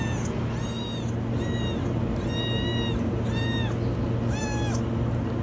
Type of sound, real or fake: real